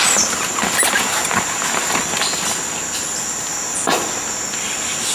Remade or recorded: recorded